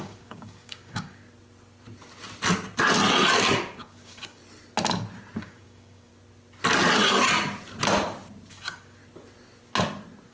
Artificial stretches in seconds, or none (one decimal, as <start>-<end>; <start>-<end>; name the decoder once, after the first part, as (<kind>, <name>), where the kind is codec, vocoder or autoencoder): 0.0-1.2 (codec, DAC); 3.6-4.4; 5.4-6.1; 8.5-9.0